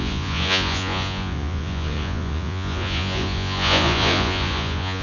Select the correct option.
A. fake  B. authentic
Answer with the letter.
A